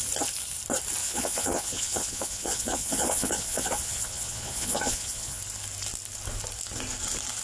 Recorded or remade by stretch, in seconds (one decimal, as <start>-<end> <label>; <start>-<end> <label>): 0.0-1.0 recorded; 1.0-5.4 remade; 5.4-7.4 recorded